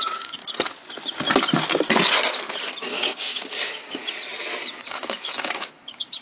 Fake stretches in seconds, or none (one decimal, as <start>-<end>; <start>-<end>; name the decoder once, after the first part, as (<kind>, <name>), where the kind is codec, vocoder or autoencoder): 0.0-0.4 (codec, DAC); 2.9-4.0; 4.8-6.2